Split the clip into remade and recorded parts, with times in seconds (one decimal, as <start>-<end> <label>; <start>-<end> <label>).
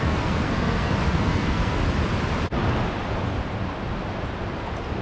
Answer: 0.0-1.8 remade; 1.8-5.0 recorded